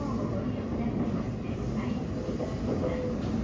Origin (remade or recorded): recorded